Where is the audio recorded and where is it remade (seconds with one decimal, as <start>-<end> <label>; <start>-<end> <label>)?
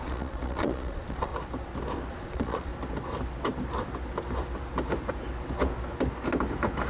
0.0-1.3 remade; 1.3-2.1 recorded; 2.1-2.7 remade; 2.7-6.9 recorded